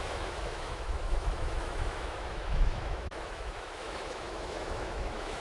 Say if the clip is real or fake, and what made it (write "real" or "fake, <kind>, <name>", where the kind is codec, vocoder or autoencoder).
fake, autoencoder, DAC-VAE